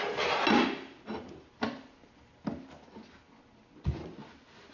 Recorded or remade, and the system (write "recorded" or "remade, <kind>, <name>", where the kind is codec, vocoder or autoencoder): recorded